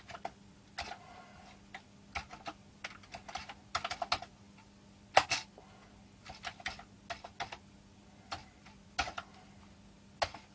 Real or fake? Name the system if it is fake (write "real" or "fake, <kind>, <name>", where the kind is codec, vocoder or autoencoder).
real